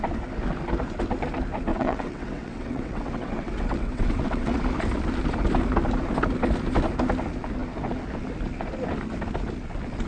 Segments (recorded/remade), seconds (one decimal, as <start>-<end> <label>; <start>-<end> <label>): 0.0-1.7 recorded; 1.7-4.6 remade; 4.6-10.1 recorded